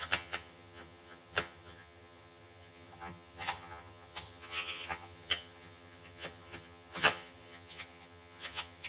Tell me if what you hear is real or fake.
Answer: fake